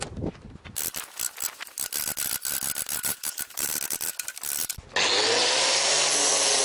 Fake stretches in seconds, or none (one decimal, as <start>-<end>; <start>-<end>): 3.0-3.7; 5.4-5.9